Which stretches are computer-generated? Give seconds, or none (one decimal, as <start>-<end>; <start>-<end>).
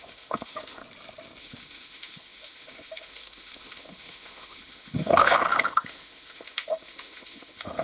0.0-0.8; 1.4-7.8